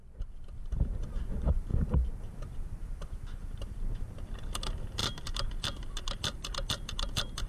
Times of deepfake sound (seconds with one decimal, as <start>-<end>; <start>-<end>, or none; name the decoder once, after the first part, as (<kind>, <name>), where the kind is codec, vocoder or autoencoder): none